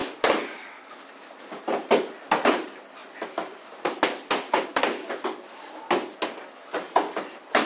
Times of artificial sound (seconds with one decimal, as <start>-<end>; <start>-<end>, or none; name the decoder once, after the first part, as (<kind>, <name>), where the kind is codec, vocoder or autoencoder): none